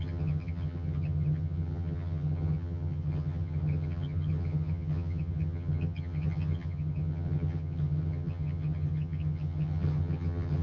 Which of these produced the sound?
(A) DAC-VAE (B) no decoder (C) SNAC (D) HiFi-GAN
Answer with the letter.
D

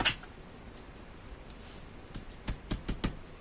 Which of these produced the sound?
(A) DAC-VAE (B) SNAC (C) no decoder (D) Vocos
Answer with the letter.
C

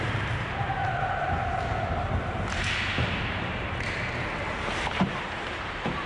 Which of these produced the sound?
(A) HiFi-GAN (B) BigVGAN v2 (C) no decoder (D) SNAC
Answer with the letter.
B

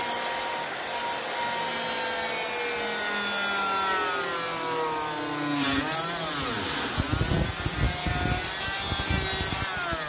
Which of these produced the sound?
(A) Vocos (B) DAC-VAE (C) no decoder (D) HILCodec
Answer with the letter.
C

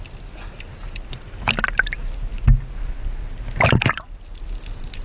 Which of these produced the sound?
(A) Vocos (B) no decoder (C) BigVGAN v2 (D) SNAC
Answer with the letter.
B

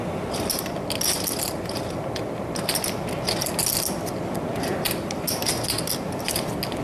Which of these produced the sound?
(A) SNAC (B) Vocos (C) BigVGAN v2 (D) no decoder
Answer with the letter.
D